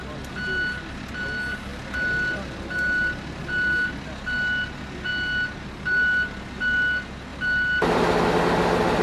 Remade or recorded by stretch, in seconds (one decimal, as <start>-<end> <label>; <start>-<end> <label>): 0.0-9.0 recorded